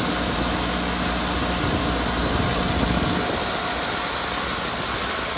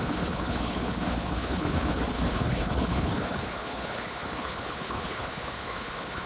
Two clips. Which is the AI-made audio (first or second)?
second